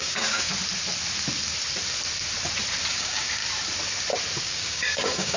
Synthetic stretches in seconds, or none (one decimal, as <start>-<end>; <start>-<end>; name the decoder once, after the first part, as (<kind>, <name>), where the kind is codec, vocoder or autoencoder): 0.0-0.5 (codec, DAC); 2.9-3.4; 4.4-5.4